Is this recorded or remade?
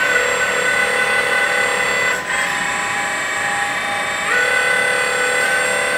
recorded